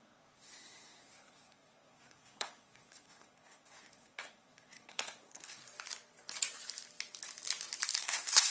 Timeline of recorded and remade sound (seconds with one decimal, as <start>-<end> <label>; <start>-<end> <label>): 0.0-5.6 remade; 5.6-8.0 recorded; 8.0-8.5 remade